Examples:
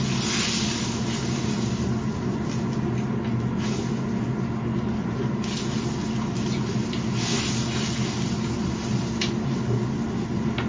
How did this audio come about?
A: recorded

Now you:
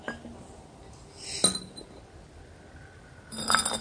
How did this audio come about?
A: recorded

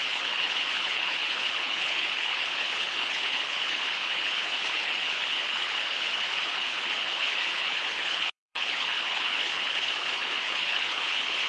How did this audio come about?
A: remade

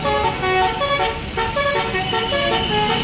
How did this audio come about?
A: recorded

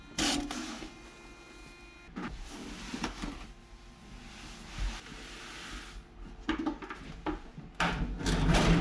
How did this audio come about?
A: recorded